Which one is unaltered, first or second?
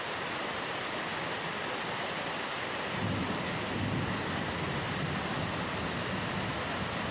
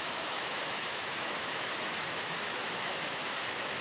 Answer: first